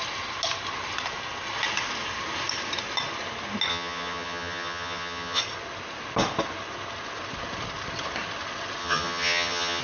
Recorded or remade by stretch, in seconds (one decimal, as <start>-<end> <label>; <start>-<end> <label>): 0.0-3.7 recorded; 3.7-5.4 remade; 5.4-8.8 recorded; 8.8-9.8 remade